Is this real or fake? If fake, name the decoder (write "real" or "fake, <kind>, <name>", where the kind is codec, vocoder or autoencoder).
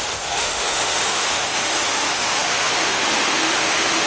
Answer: fake, autoencoder, DAC-VAE